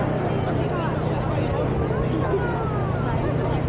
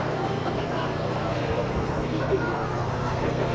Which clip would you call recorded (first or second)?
first